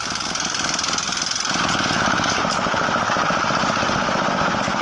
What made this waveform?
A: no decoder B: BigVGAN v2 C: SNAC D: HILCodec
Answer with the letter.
A